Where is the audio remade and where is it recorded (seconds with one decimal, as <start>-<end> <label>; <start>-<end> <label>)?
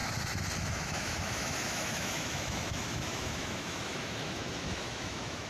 0.0-0.6 recorded; 0.6-5.5 remade